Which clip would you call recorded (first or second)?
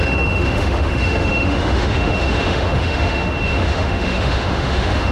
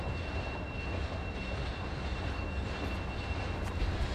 second